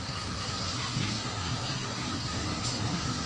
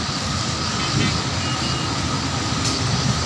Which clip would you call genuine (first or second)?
second